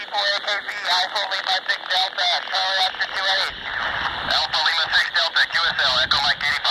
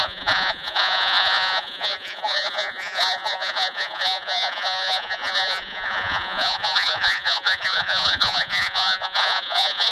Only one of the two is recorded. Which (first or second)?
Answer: first